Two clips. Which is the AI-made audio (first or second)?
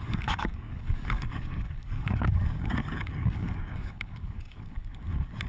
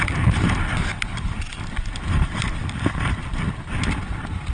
first